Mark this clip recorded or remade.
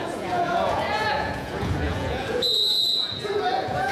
remade